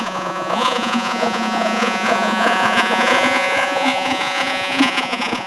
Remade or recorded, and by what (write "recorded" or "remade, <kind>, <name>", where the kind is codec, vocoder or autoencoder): remade, vocoder, Vocos